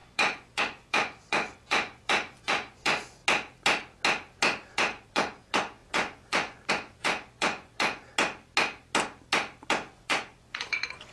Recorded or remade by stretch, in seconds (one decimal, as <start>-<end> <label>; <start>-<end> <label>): 0.0-3.2 remade; 3.2-4.7 recorded; 4.7-8.1 remade; 8.1-9.9 recorded; 9.9-11.1 remade